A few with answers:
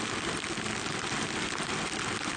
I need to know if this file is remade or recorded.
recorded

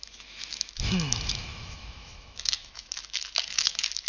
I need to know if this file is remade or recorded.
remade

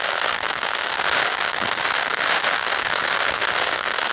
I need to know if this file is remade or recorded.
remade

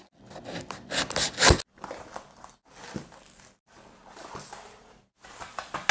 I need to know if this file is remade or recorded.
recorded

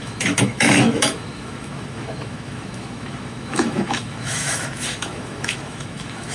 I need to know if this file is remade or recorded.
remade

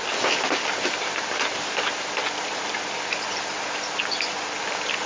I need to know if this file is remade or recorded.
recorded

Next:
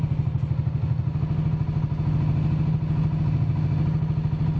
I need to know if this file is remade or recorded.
recorded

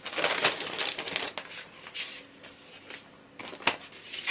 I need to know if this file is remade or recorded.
recorded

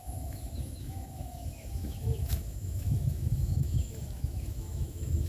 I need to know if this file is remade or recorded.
remade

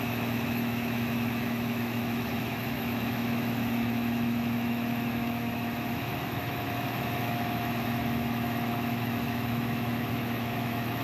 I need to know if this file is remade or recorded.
remade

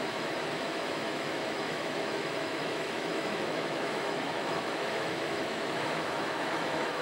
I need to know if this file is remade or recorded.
remade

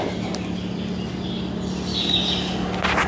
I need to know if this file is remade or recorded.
recorded